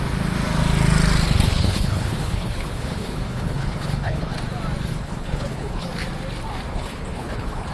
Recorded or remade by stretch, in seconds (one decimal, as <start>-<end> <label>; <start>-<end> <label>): 0.0-1.5 recorded; 1.5-4.4 remade; 4.4-4.9 recorded; 4.9-5.9 remade; 5.9-6.7 recorded; 6.7-7.7 remade